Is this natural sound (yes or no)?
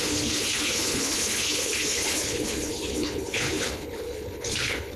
no